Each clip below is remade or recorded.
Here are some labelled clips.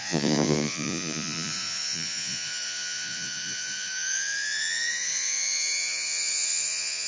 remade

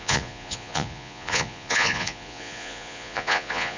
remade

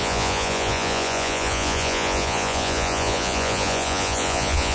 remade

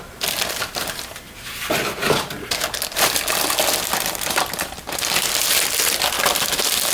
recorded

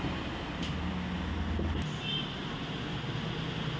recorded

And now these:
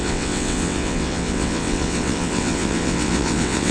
remade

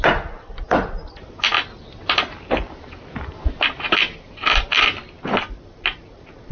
recorded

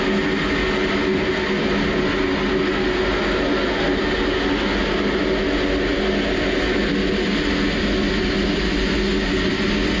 recorded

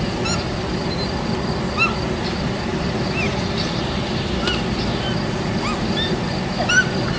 recorded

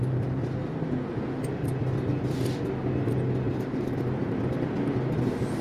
recorded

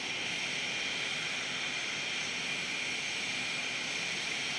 recorded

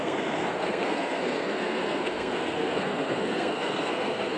remade